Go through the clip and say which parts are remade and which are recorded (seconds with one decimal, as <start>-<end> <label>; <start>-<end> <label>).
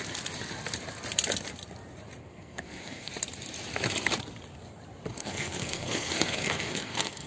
0.0-2.2 recorded; 2.2-3.1 remade; 3.1-5.2 recorded; 5.2-7.3 remade